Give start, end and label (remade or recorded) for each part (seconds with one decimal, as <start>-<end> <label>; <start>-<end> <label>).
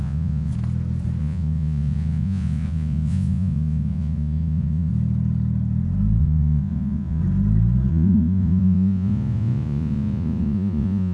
0.0-0.5 remade; 0.5-1.2 recorded; 1.2-4.9 remade; 4.9-6.2 recorded; 6.2-7.2 remade; 7.2-7.9 recorded; 7.9-11.1 remade